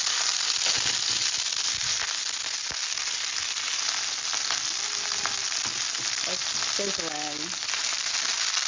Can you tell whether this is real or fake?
real